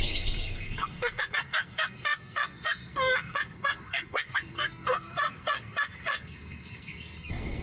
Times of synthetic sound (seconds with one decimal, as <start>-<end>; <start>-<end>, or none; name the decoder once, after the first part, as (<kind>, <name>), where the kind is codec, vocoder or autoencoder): 0.0-7.6 (codec, SNAC)